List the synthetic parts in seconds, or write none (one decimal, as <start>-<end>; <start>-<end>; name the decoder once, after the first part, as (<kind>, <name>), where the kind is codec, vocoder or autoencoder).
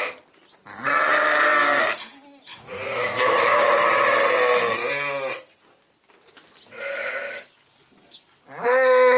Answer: 2.5-4.2 (autoencoder, DAC-VAE)